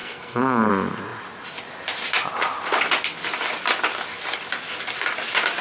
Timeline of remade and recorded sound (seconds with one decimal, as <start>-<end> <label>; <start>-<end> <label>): 0.0-0.7 remade; 0.7-5.6 recorded